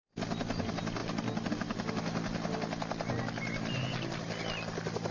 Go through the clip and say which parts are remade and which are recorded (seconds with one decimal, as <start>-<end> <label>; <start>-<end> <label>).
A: 0.0-5.1 recorded